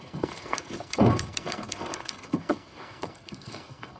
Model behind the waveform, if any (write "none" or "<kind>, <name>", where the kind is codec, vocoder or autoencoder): codec, SNAC